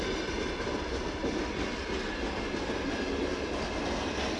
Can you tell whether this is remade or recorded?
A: recorded